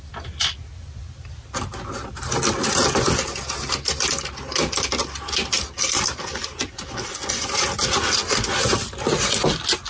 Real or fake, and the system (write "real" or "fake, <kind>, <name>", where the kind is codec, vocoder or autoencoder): real